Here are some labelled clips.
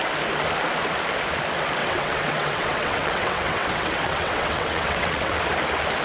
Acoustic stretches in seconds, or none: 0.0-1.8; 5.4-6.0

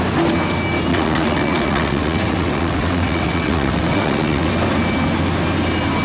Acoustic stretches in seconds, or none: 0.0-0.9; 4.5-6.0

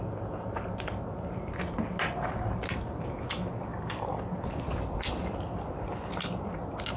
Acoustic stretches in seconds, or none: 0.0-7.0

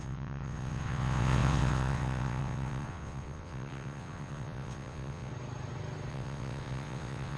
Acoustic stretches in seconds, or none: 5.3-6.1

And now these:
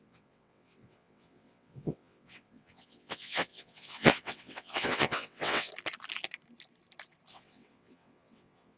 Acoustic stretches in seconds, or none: 5.7-7.3

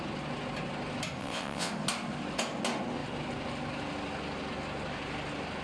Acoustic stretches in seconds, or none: 0.0-1.2; 1.7-5.6